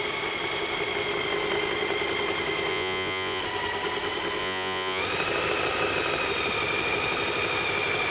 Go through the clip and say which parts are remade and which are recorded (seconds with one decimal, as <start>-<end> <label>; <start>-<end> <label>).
0.0-2.7 recorded; 2.7-3.4 remade; 3.4-4.4 recorded; 4.4-5.0 remade; 5.0-8.1 recorded